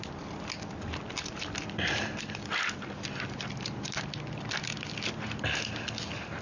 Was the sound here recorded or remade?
recorded